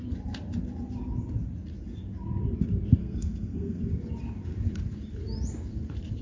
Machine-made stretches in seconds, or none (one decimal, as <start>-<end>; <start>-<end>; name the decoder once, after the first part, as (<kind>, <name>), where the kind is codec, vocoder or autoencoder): 3.0-3.8 (codec, SNAC)